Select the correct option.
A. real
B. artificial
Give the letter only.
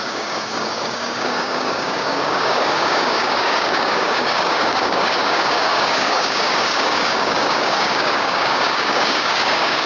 B